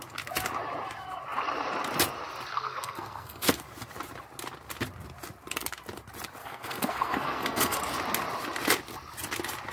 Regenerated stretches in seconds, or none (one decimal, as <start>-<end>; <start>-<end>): 2.5-3.6; 6.4-7.8